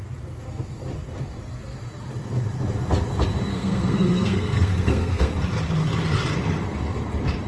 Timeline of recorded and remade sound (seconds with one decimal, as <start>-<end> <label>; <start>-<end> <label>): 0.0-3.5 recorded; 3.5-5.3 remade; 5.3-7.5 recorded